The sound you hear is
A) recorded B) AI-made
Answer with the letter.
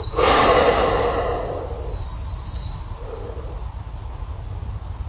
A